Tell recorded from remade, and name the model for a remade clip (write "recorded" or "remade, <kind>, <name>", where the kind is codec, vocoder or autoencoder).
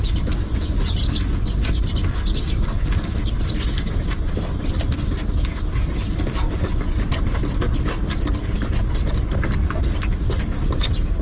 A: recorded